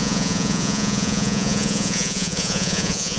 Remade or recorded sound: remade